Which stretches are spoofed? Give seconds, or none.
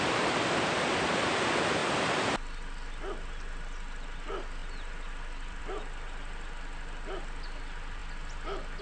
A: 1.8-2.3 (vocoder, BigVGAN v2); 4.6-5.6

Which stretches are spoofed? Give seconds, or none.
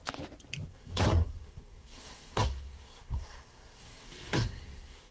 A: 0.7-5.1 (codec, SNAC)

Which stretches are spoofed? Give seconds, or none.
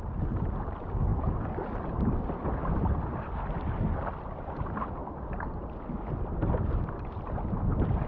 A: none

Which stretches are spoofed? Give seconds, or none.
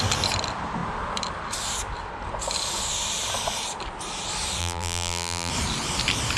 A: 4.6-5.5 (vocoder, BigVGAN v2)